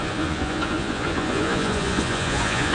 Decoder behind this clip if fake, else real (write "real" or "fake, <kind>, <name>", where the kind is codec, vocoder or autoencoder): fake, vocoder, Vocos